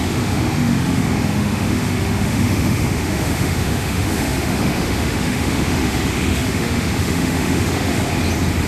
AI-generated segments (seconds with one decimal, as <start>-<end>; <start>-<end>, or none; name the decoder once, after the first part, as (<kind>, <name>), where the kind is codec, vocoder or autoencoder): 0.0-8.0 (autoencoder, DAC-VAE)

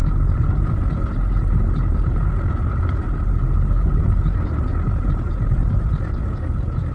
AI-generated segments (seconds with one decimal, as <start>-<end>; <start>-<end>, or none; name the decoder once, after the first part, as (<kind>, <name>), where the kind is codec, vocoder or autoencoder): none

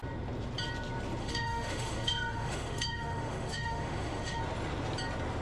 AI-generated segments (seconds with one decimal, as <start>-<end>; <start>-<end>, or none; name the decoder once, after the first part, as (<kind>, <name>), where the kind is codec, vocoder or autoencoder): 1.2-4.4 (autoencoder, DAC-VAE)

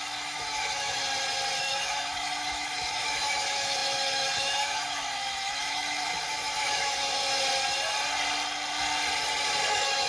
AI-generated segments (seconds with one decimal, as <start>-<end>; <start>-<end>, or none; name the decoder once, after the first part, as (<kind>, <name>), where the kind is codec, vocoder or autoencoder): 0.0-1.0 (autoencoder, DAC-VAE); 1.6-7.2; 9.7-10.1

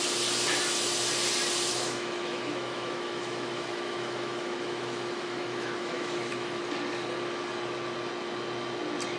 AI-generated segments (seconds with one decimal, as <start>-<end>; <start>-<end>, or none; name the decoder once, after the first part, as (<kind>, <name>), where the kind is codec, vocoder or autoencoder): 1.7-6.6 (autoencoder, DAC-VAE)

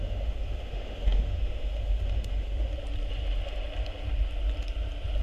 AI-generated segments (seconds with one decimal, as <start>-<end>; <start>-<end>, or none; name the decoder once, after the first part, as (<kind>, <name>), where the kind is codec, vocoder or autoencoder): 0.0-2.7 (autoencoder, DAC-VAE)